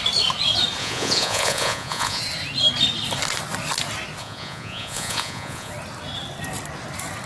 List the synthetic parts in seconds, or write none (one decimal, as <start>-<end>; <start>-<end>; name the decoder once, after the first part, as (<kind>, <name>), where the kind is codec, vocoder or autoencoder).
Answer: 0.8-2.2 (vocoder, Vocos); 4.2-5.7